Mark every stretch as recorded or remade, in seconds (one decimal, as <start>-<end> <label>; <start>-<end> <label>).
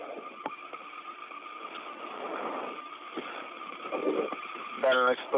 0.0-5.4 recorded